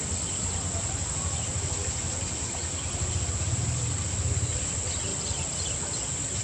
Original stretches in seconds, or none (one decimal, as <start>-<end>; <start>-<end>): 0.0-6.4